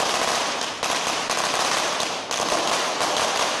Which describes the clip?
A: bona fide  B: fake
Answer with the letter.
A